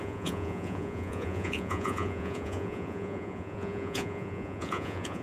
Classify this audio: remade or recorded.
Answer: remade